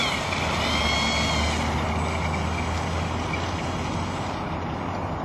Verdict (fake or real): real